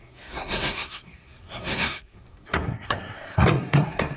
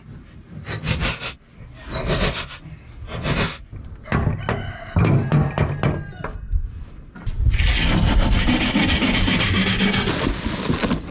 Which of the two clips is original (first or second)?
second